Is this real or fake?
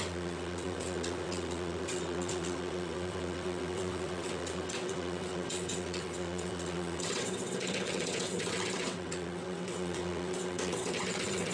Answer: fake